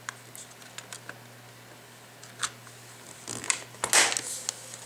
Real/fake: real